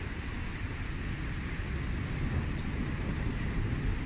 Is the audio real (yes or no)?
yes